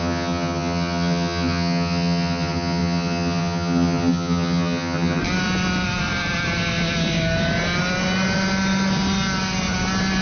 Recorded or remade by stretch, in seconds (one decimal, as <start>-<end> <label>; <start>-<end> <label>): 0.0-5.2 remade; 5.2-10.2 recorded